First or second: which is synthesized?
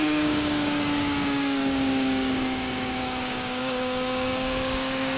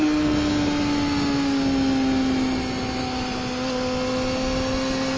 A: first